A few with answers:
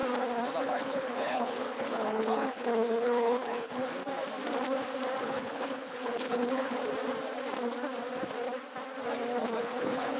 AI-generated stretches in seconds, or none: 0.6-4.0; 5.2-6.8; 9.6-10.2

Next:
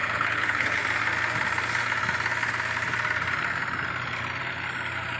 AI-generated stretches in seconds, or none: 0.0-0.8